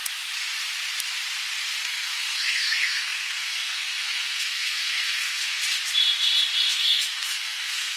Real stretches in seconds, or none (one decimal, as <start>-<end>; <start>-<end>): 0.0-1.8; 5.6-6.7